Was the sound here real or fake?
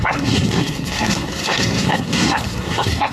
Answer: fake